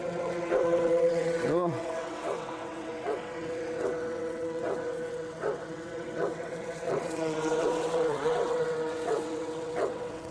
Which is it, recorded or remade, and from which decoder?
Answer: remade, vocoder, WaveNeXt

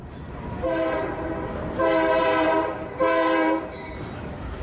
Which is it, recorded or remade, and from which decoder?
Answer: remade, vocoder, BigVGAN v2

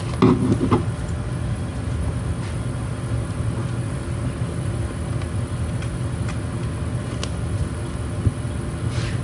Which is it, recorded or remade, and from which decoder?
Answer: recorded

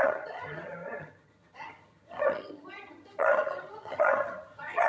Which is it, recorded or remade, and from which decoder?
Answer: remade, vocoder, HiFi-GAN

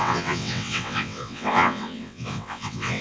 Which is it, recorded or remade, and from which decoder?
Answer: remade, vocoder, WaveNeXt